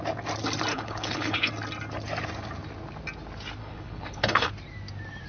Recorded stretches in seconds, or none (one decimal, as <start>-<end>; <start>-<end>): 0.0-0.7; 1.5-3.6; 4.5-5.3